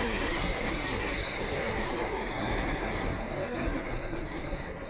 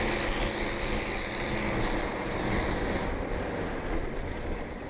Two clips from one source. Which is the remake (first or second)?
first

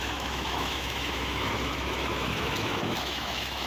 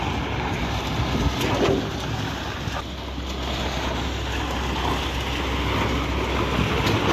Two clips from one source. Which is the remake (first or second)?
first